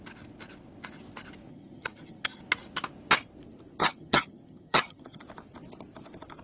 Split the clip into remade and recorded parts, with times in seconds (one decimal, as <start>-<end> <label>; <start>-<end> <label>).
0.0-1.5 recorded; 1.5-2.4 remade; 2.4-3.8 recorded; 3.8-5.2 remade; 5.2-6.4 recorded